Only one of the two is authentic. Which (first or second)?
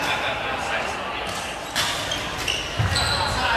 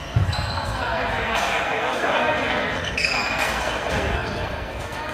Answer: first